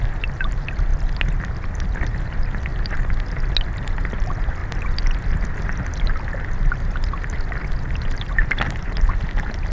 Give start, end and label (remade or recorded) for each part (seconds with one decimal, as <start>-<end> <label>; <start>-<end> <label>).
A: 0.0-9.7 recorded